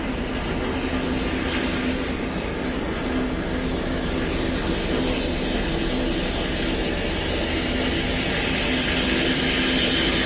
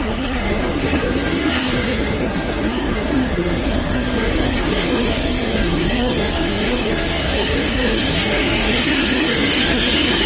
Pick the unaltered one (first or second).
first